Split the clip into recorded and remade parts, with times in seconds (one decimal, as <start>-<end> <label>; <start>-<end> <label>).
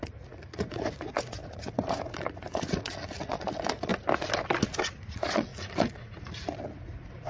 0.0-3.9 remade; 3.9-5.1 recorded; 5.1-7.3 remade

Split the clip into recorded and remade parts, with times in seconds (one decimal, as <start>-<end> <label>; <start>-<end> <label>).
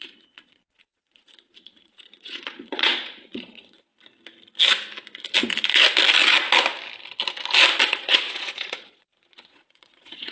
0.0-3.9 remade; 3.9-7.9 recorded; 7.9-10.3 remade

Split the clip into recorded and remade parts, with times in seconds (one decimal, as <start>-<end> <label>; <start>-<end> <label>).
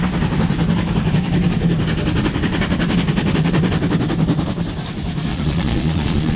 0.0-5.3 recorded; 5.3-6.4 remade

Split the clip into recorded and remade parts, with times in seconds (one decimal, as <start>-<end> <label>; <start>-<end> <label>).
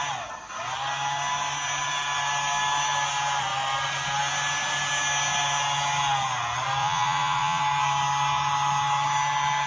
0.0-6.8 recorded; 6.8-7.6 remade; 7.6-9.7 recorded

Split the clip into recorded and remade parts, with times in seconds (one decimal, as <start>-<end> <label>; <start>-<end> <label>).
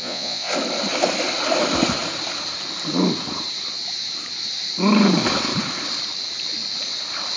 0.0-0.5 remade; 0.5-7.4 recorded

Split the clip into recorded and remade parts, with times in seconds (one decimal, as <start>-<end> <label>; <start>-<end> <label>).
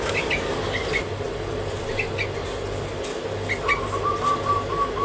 0.0-5.0 recorded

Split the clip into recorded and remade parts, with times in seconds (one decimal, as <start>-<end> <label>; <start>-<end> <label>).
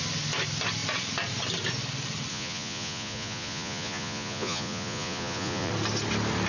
0.0-2.3 recorded; 2.3-5.7 remade; 5.7-6.5 recorded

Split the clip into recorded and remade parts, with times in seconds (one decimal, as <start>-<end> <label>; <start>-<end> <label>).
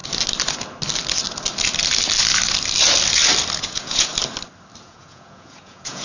0.0-3.6 recorded; 3.6-4.1 remade; 4.1-4.8 recorded; 4.8-6.0 remade